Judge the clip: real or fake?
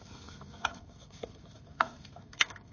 fake